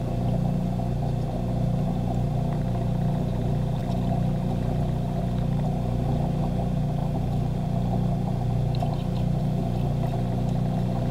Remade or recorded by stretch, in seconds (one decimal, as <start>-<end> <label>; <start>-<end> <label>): 0.0-11.1 recorded